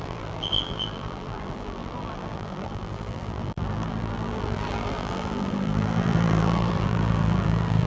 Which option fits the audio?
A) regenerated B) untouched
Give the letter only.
A